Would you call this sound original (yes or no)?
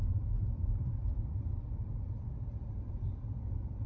no